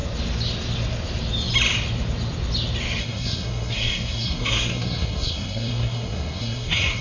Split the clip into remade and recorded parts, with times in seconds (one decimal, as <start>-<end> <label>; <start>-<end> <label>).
0.0-3.0 recorded; 3.0-7.0 remade